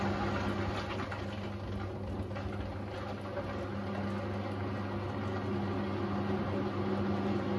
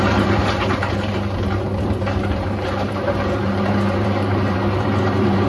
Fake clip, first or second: second